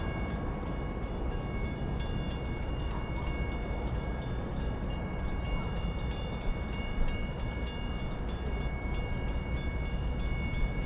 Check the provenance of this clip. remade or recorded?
recorded